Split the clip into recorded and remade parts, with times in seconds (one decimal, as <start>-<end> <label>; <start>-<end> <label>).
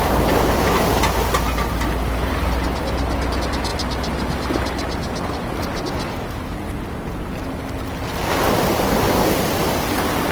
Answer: 0.0-10.3 recorded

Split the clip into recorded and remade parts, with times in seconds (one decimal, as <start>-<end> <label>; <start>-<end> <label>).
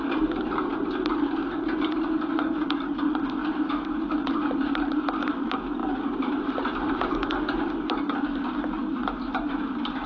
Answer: 0.0-10.1 recorded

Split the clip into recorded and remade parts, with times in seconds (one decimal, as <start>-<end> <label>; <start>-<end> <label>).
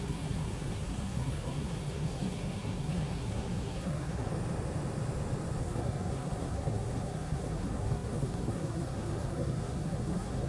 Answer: 0.0-4.3 remade; 4.3-5.6 recorded; 5.6-10.5 remade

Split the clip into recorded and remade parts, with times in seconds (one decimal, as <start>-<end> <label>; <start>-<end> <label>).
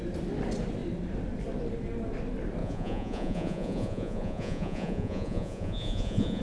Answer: 0.0-2.6 recorded; 2.6-6.4 remade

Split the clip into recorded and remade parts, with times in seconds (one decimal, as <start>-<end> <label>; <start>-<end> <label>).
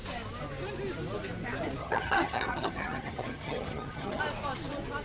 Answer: 0.0-1.8 recorded; 1.8-4.2 remade; 4.2-5.0 recorded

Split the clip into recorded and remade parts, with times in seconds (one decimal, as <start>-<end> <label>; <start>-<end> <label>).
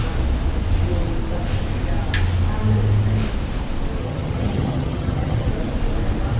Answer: 0.0-4.0 recorded; 4.0-5.5 remade; 5.5-6.4 recorded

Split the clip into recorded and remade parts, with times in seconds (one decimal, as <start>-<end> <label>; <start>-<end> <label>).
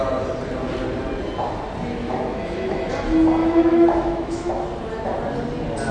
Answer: 0.0-2.0 recorded; 2.0-2.9 remade; 2.9-3.4 recorded; 3.4-4.5 remade; 4.5-5.9 recorded